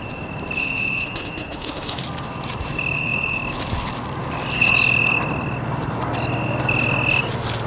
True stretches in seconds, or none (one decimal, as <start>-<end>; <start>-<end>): 0.0-0.6; 2.0-7.7